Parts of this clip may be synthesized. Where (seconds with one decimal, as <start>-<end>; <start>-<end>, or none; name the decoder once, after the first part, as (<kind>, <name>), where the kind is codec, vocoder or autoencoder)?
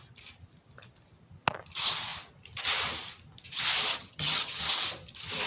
3.9-4.7 (vocoder, HiFi-GAN)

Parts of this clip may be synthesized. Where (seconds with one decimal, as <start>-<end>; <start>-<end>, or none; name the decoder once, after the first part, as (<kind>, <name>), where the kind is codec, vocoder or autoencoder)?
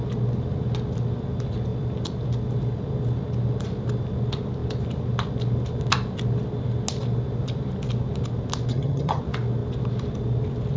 8.7-9.2 (vocoder, HiFi-GAN)